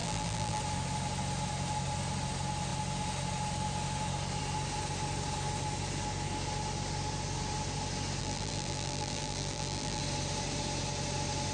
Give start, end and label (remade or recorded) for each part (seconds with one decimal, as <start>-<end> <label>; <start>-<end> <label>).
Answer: 0.0-0.6 remade; 0.6-8.2 recorded; 8.2-10.0 remade; 10.0-11.5 recorded